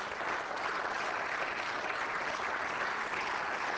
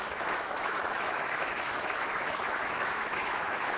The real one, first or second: first